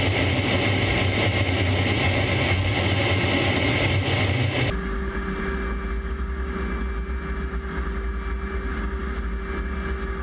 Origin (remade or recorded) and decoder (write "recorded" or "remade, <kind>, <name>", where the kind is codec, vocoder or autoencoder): recorded